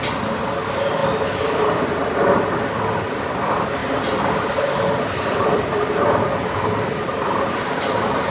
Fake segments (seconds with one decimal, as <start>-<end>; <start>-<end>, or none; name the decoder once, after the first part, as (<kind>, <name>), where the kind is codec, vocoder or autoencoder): 0.0-8.3 (vocoder, BigVGAN v2)